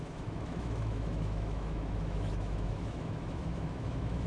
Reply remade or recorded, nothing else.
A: remade